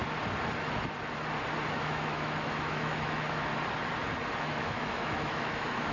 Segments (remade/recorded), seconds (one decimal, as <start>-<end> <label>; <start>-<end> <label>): 0.0-1.7 recorded; 1.7-3.5 remade; 3.5-4.4 recorded; 4.4-5.9 remade